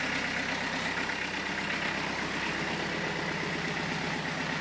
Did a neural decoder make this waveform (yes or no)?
no